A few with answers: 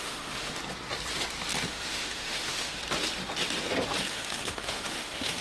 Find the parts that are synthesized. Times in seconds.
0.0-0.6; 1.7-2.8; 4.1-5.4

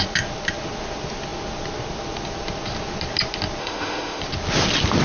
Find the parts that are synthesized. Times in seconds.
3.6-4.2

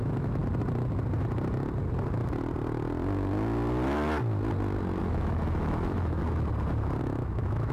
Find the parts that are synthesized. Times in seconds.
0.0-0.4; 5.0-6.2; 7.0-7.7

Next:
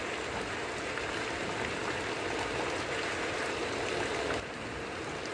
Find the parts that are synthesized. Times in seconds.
none

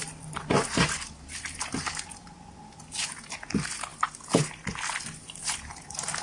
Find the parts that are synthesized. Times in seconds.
none

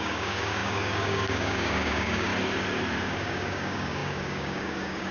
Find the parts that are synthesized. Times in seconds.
0.0-2.3; 3.0-5.1

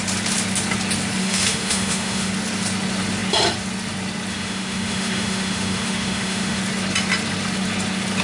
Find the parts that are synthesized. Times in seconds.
1.2-2.3; 4.3-6.6